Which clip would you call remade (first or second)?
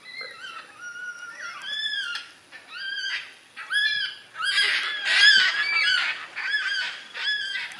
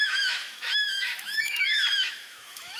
second